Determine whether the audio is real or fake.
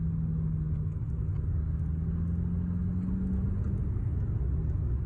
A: real